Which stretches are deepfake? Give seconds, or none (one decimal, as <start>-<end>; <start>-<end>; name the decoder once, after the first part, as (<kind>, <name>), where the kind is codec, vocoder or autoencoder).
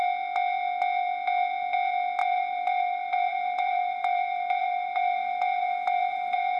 2.2-6.6 (vocoder, BigVGAN v2)